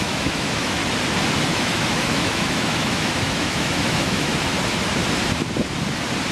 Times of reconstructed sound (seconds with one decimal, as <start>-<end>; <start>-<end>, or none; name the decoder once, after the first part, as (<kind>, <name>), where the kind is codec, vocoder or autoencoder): 0.0-0.8 (autoencoder, DAC-VAE); 1.5-4.3